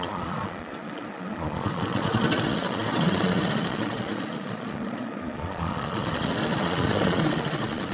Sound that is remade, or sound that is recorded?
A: remade